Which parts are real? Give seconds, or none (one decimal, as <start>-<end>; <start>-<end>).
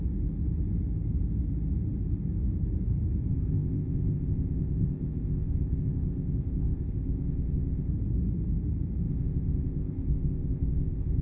0.0-3.3; 7.9-9.1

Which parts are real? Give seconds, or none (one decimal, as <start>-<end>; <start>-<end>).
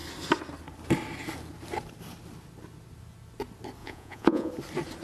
0.0-3.8; 4.5-5.0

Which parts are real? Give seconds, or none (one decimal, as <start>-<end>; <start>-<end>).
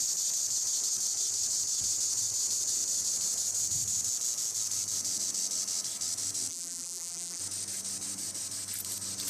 0.0-6.5; 7.4-9.3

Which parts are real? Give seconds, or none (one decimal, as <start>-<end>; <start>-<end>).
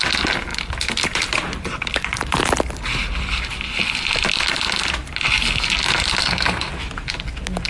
0.0-6.2; 6.7-7.7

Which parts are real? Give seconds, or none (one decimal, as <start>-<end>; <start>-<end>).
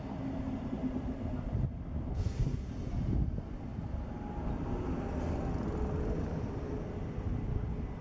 0.0-2.1; 2.7-8.0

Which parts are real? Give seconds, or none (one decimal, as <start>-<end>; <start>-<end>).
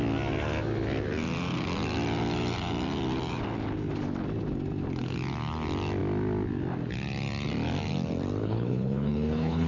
0.0-8.4